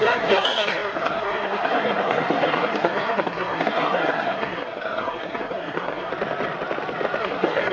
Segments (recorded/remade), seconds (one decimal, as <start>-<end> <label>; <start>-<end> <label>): 0.0-6.1 remade; 6.1-7.2 recorded; 7.2-7.7 remade